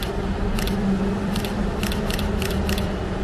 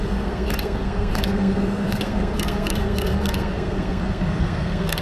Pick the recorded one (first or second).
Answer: first